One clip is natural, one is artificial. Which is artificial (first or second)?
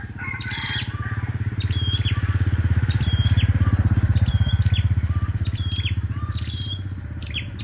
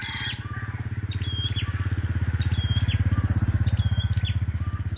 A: first